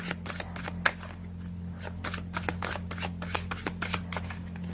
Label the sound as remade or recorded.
recorded